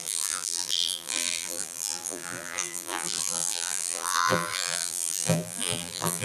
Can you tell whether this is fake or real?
fake